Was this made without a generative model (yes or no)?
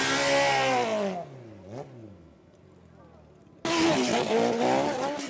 yes